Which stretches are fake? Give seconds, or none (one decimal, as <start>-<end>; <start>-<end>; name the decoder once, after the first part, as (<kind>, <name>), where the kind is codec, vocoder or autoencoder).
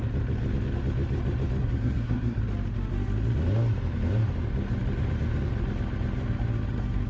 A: 1.6-2.4 (codec, SNAC)